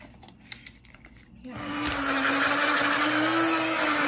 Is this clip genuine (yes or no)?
yes